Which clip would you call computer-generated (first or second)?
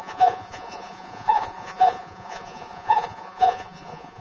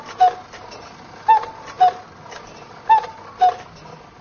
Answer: first